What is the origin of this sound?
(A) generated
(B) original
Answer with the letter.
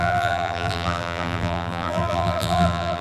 A